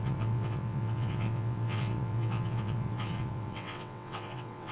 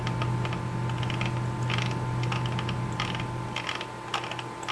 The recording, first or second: second